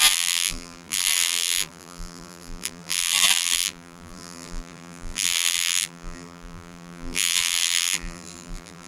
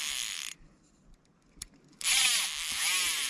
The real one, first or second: second